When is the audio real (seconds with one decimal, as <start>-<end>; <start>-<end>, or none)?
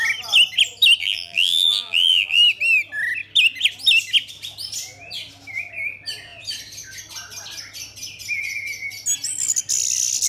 0.0-1.0; 2.4-10.3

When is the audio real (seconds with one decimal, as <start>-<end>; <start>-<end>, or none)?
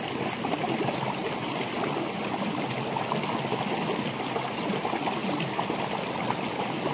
0.0-6.9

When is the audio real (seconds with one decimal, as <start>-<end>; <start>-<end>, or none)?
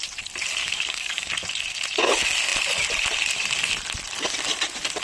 0.0-0.6; 1.3-5.0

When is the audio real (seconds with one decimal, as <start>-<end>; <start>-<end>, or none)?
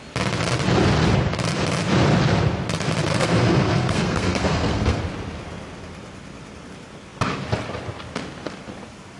0.0-3.1; 5.0-9.2